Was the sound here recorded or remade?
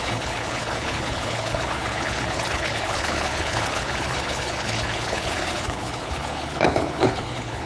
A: remade